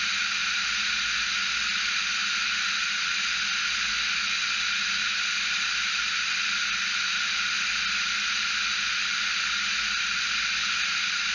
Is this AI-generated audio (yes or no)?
no